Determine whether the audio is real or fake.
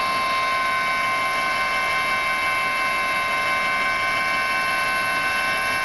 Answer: real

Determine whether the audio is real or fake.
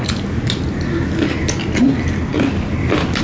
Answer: real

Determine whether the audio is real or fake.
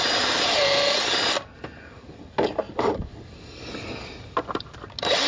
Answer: real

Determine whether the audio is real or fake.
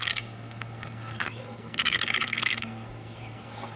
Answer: fake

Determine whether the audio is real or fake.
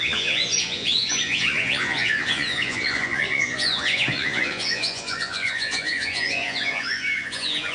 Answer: fake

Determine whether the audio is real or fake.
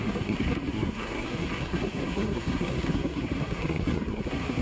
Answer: fake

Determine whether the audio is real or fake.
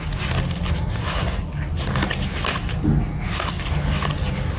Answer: real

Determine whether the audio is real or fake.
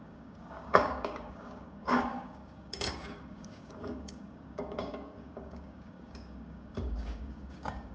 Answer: fake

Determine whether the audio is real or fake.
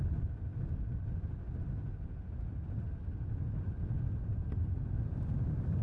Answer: real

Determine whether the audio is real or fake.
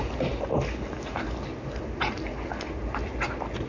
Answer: real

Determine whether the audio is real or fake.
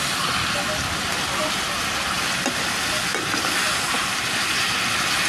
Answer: real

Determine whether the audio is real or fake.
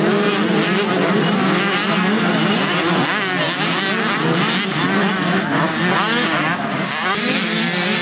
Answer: real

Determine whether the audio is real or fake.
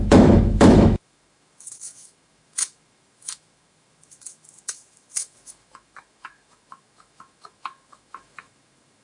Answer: fake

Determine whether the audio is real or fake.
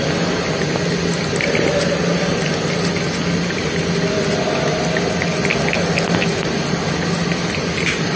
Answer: real